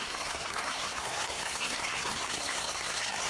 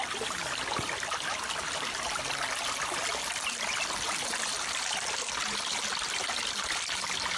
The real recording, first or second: second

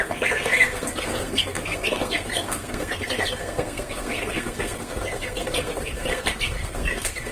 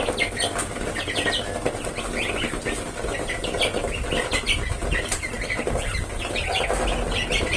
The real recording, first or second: second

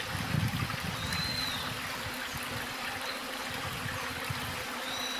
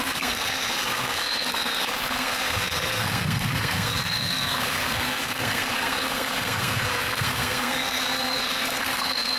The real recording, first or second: first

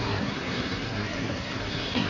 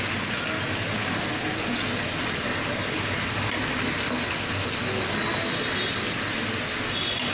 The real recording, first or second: second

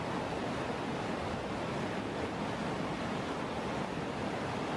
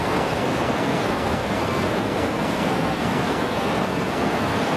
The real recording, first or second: first